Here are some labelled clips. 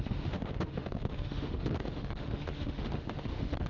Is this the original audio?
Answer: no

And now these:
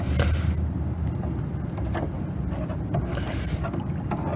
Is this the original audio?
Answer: yes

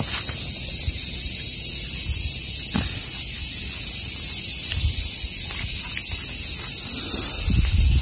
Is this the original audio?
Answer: yes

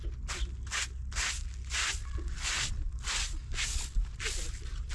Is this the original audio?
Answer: yes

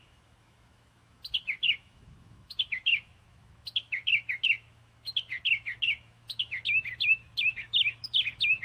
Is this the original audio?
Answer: no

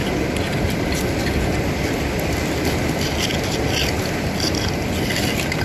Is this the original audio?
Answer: yes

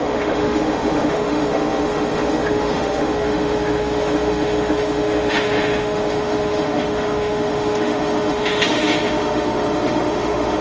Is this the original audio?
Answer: no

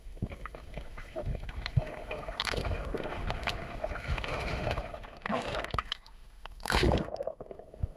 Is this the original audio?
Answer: no